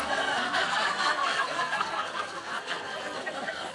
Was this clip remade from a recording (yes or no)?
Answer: yes